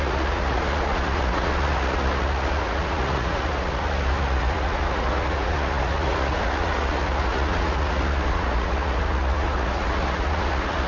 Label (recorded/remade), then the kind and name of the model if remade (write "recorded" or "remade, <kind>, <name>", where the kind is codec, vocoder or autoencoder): remade, vocoder, Vocos